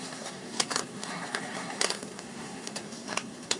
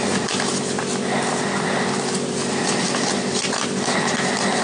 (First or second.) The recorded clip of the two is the second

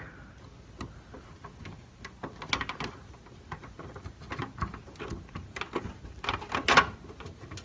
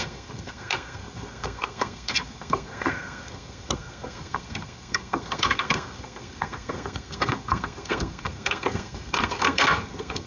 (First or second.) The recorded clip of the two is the first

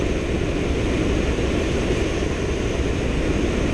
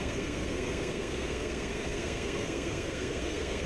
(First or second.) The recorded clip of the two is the first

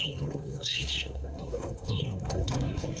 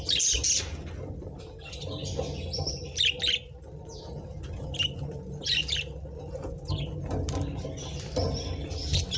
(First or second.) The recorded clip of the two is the second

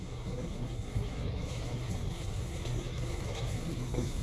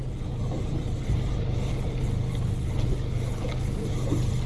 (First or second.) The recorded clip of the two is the second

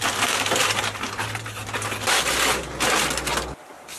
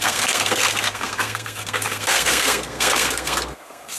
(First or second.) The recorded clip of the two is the first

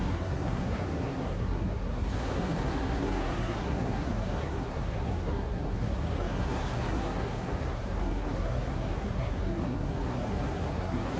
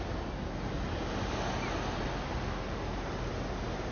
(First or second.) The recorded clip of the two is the second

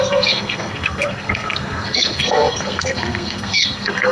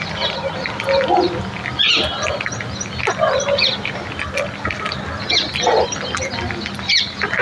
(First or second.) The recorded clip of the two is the second